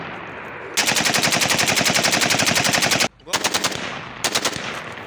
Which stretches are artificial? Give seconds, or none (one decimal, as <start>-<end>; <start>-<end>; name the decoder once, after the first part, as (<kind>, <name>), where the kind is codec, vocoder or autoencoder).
none